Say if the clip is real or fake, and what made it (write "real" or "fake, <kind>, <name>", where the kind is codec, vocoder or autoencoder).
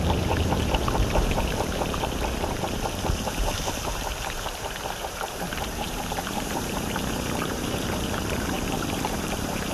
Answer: fake, vocoder, BigVGAN v2